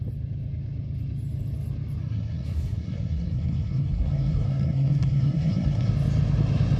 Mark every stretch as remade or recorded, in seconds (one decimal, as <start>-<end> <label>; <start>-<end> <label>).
0.0-2.0 recorded; 2.0-5.9 remade; 5.9-6.8 recorded